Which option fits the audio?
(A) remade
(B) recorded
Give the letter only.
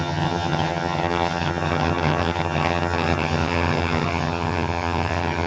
A